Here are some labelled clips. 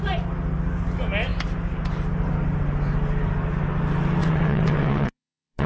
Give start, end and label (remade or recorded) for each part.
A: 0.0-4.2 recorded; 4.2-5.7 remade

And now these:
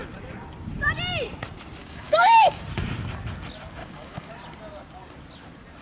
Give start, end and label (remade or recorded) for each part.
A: 0.0-1.8 recorded; 1.8-2.6 remade; 2.6-3.8 recorded; 3.8-4.3 remade; 4.3-5.8 recorded

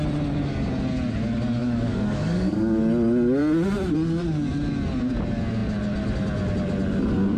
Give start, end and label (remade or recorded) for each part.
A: 0.0-1.6 recorded; 1.6-2.8 remade; 2.8-7.4 recorded

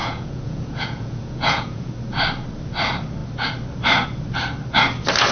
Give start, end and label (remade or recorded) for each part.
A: 0.0-1.9 remade; 1.9-5.3 recorded

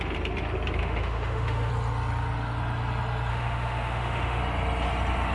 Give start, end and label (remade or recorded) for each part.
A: 0.0-0.8 recorded; 0.8-1.7 remade; 1.7-3.3 recorded; 3.3-4.4 remade; 4.4-5.3 recorded

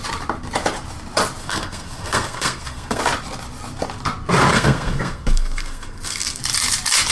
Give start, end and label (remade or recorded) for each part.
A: 0.0-1.4 recorded; 1.4-3.0 remade; 3.0-4.5 recorded; 4.5-6.4 remade; 6.4-7.1 recorded

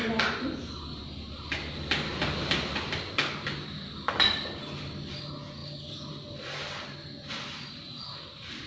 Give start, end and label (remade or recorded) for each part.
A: 0.0-8.7 recorded